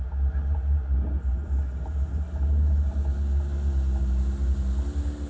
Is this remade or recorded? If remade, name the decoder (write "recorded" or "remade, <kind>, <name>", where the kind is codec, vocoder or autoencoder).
recorded